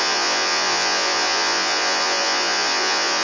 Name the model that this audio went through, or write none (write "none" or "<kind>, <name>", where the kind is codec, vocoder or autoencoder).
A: vocoder, Vocos